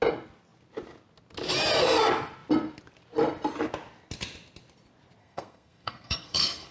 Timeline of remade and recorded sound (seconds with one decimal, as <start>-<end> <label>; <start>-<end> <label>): 0.0-5.2 recorded; 5.2-6.7 remade